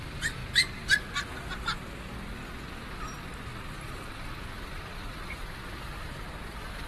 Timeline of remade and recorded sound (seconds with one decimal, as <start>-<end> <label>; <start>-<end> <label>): 0.0-0.4 remade; 0.4-4.5 recorded; 4.5-6.9 remade